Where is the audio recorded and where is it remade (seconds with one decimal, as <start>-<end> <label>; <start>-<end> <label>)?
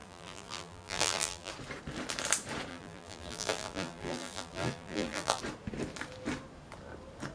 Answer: 0.0-1.5 remade; 1.5-2.7 recorded; 2.7-5.4 remade; 5.4-7.3 recorded